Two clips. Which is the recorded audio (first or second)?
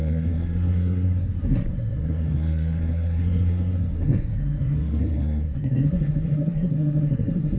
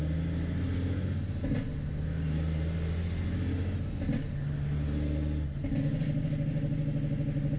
second